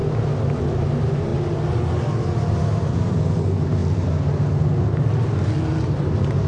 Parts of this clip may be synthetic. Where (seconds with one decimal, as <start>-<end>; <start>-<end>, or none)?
none